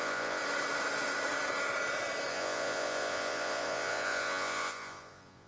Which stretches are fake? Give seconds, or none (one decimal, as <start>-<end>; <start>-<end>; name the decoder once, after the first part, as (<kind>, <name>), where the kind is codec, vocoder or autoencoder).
0.0-0.4 (vocoder, Vocos); 2.3-5.5